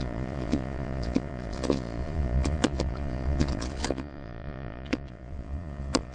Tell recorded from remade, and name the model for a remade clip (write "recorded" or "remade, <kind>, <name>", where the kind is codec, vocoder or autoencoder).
remade, vocoder, Vocos